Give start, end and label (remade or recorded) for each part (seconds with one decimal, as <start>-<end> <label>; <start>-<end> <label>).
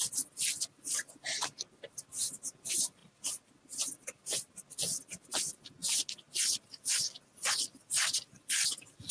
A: 0.0-3.0 recorded; 3.0-4.5 remade; 4.5-9.1 recorded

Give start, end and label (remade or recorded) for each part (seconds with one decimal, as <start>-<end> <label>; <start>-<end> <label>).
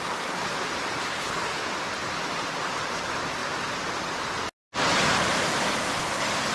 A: 0.0-1.0 recorded; 1.0-1.6 remade; 1.6-6.5 recorded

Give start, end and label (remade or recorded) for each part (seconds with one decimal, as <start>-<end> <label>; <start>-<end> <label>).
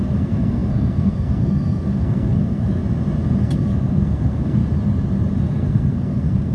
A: 0.0-2.8 remade; 2.8-3.4 recorded; 3.4-4.6 remade; 4.6-5.4 recorded; 5.4-6.5 remade